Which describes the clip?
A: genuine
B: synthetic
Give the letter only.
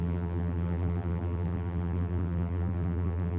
B